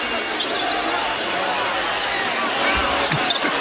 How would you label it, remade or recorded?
recorded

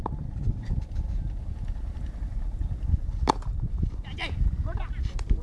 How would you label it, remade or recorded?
recorded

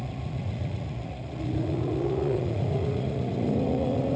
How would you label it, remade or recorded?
remade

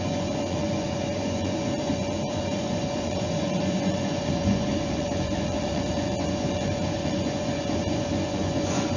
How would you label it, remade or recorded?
remade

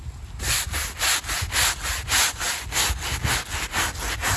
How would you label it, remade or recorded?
recorded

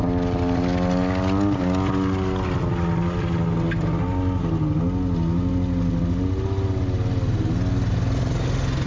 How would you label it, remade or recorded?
recorded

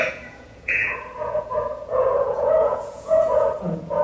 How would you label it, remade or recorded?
remade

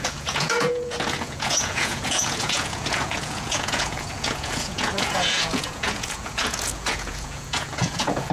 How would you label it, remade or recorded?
remade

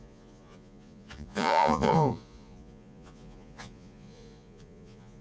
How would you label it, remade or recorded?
remade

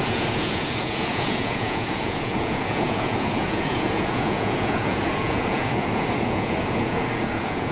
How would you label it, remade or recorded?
remade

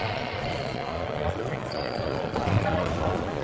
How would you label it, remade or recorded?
remade